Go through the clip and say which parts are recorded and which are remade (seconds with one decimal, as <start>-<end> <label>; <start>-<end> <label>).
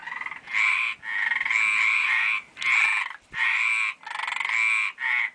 0.0-5.3 recorded